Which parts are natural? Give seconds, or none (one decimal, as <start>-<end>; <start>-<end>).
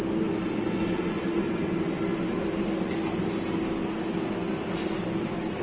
0.0-5.6